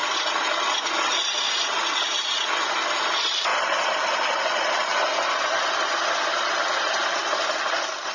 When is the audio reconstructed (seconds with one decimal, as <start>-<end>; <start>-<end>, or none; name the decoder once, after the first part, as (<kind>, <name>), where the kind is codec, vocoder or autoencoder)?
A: 2.9-3.5 (vocoder, BigVGAN v2); 6.9-8.1